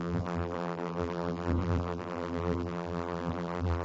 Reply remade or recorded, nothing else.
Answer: remade